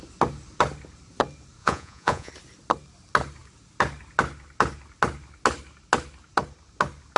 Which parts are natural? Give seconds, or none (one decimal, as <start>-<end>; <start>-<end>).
0.0-1.6; 2.3-7.2